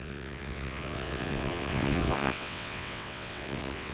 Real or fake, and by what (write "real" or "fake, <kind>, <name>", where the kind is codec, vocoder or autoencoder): fake, vocoder, WaveNeXt